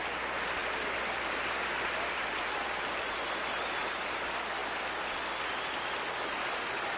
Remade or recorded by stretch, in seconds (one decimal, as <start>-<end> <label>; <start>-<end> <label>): 0.0-7.0 recorded